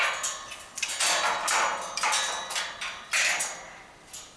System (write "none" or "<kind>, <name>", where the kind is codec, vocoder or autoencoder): none